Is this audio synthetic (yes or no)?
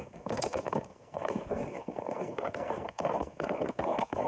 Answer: yes